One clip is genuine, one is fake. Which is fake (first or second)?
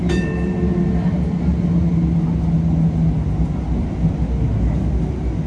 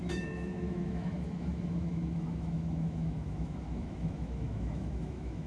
second